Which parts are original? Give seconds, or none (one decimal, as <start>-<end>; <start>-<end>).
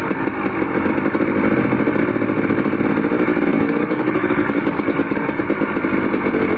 0.0-3.5; 5.4-6.6